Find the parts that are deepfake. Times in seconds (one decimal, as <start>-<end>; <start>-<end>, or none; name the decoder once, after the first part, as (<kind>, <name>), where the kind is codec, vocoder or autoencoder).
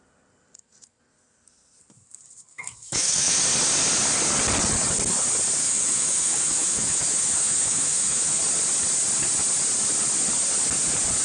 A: 2.5-3.4 (autoencoder, DAC-VAE); 5.6-8.4